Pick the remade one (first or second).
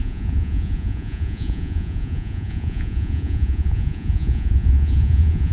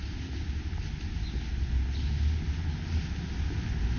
first